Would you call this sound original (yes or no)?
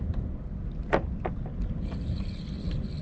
yes